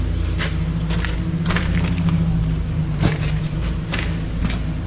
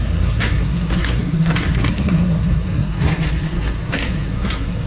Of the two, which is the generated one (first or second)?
second